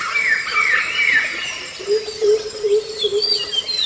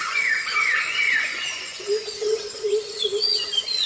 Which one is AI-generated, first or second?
second